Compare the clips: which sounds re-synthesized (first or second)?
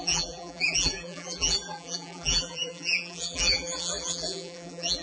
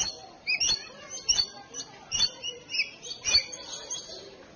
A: first